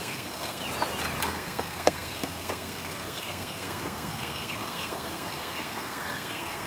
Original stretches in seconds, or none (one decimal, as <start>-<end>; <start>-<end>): 0.6-1.2